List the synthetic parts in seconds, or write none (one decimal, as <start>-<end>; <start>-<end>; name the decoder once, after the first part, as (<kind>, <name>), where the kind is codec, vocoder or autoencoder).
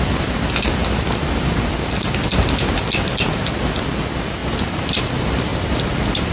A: 4.4-5.0 (vocoder, BigVGAN v2); 5.5-6.3